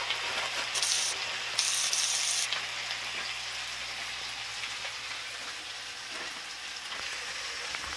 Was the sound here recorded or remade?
recorded